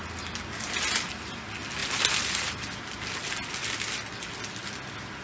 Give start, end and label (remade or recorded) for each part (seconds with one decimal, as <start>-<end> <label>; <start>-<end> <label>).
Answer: 0.0-5.2 recorded